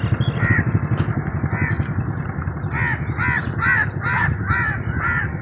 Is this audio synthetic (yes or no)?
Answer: no